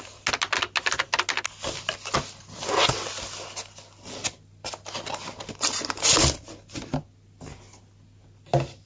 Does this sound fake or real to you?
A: real